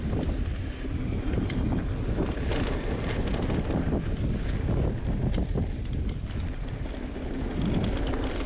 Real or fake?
real